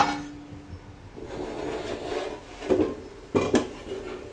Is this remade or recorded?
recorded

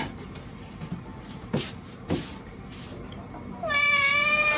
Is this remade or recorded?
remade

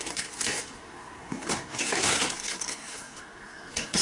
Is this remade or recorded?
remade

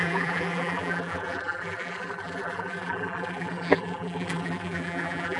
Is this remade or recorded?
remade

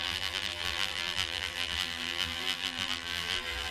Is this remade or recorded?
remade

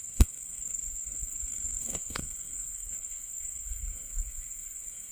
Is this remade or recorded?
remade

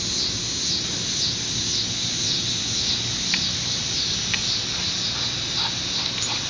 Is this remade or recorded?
recorded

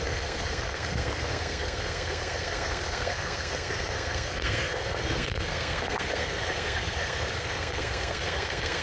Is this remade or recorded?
remade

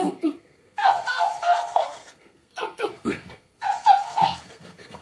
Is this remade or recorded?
remade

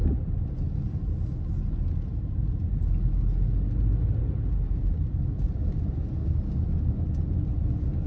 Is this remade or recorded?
recorded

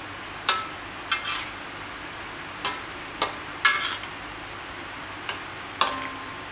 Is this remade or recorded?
recorded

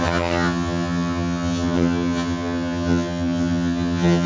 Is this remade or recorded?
remade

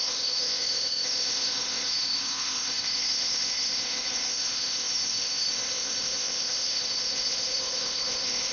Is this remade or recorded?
remade